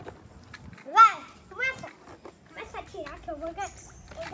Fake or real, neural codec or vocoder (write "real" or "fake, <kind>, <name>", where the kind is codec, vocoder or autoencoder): real